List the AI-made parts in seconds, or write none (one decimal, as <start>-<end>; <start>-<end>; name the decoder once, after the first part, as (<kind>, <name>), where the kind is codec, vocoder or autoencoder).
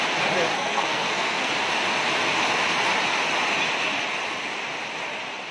0.5-1.5 (codec, SNAC)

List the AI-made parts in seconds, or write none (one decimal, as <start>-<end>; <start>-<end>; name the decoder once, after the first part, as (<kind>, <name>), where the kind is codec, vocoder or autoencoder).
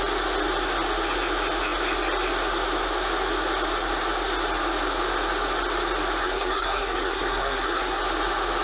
6.2-8.0 (codec, SNAC)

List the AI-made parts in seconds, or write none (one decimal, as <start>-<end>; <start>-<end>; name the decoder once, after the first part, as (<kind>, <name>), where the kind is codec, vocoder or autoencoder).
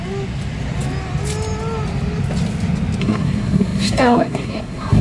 3.0-5.0 (codec, SNAC)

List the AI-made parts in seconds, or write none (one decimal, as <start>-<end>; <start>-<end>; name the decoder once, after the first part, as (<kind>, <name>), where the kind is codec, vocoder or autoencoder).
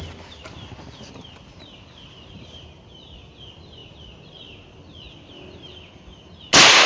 none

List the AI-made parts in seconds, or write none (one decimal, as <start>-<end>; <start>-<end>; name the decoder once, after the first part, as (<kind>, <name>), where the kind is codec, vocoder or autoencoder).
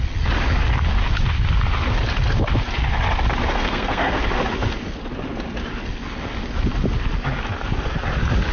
3.5-4.2 (codec, SNAC)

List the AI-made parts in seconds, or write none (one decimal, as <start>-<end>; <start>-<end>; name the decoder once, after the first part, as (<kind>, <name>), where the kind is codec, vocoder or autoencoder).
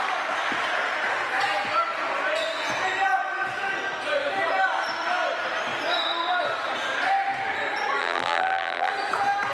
8.0-8.9 (vocoder, BigVGAN v2)